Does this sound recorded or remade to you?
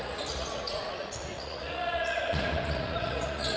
remade